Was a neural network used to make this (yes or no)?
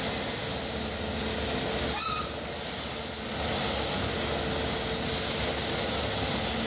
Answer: no